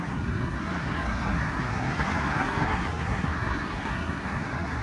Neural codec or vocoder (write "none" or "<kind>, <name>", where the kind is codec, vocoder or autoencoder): codec, SNAC